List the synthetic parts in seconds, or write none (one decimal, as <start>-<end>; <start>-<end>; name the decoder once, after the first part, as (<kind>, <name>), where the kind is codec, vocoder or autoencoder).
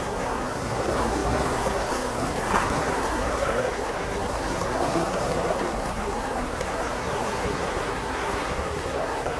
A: 0.0-9.4 (codec, SNAC)